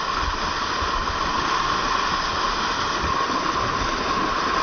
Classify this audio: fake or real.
real